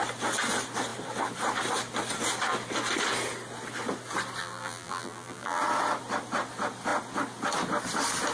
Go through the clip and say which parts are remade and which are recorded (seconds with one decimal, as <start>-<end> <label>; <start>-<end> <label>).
0.0-4.4 recorded; 4.4-5.6 remade; 5.6-8.3 recorded